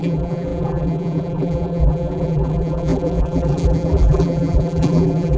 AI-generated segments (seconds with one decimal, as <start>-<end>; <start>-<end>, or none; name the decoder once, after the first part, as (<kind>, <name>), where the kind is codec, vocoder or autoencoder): 0.0-5.4 (vocoder, BigVGAN v2)